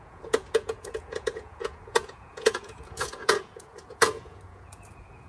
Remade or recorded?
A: remade